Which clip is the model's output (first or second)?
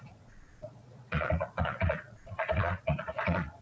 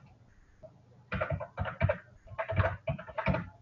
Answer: first